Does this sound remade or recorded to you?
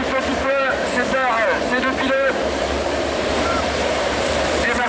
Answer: remade